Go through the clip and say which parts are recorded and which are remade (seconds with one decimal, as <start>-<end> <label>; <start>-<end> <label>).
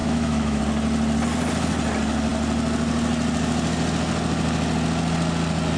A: 0.0-0.6 remade; 0.6-5.8 recorded